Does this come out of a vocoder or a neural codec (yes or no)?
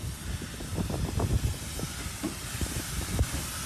no